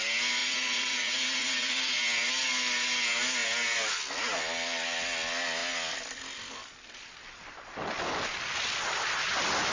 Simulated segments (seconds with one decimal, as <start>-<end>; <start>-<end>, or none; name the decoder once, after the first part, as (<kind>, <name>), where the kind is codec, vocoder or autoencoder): 0.4-2.0 (vocoder, Vocos)